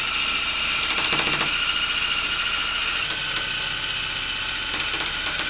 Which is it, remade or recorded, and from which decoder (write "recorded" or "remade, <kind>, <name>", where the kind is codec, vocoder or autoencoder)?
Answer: recorded